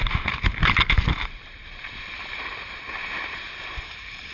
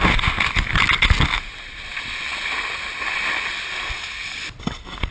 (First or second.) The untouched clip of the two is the second